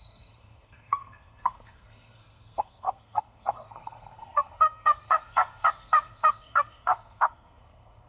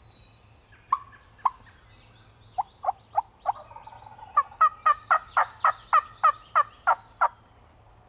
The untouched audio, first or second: second